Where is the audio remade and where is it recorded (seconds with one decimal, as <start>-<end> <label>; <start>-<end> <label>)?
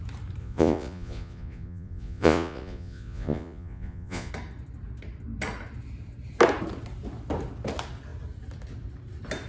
0.0-0.4 recorded; 0.4-4.3 remade; 4.3-9.5 recorded